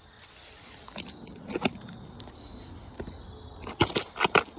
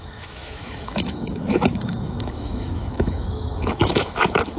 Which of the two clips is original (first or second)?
first